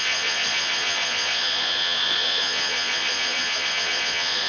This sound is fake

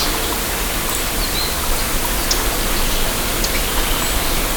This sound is real